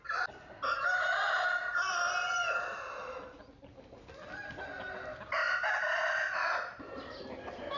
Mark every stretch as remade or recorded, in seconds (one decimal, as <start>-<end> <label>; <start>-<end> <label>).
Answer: 0.0-7.8 recorded